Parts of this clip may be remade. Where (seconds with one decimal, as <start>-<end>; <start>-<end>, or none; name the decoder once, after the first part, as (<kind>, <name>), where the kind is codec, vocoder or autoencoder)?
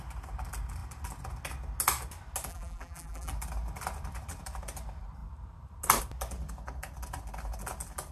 2.5-3.3 (vocoder, BigVGAN v2)